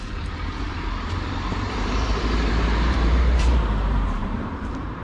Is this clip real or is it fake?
fake